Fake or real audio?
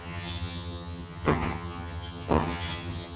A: fake